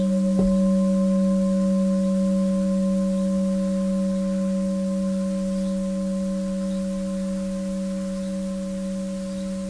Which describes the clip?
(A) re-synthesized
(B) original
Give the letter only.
B